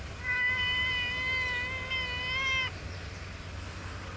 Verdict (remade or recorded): recorded